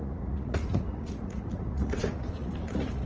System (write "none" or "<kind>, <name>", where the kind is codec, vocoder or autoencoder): vocoder, Vocos